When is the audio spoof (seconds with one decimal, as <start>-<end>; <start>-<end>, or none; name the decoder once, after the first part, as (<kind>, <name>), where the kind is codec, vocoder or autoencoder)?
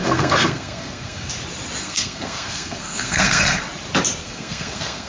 0.0-1.3 (codec, SNAC); 1.8-3.6; 4.2-5.1